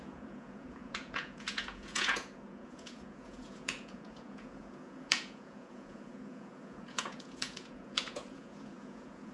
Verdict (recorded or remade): remade